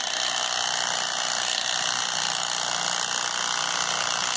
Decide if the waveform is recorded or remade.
recorded